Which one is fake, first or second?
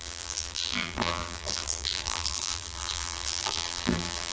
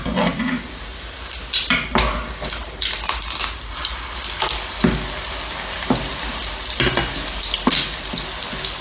first